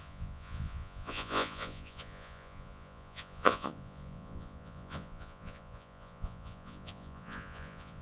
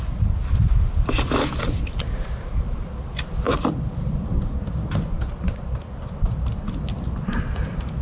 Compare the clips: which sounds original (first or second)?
second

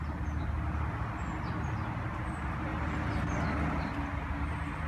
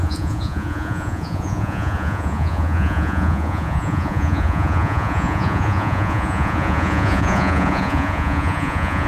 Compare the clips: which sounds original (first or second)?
first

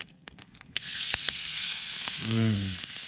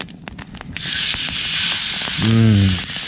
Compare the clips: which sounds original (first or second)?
second